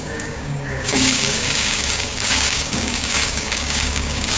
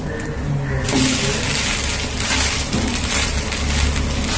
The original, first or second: second